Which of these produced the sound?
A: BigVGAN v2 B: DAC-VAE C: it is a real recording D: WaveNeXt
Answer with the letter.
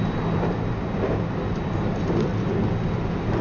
C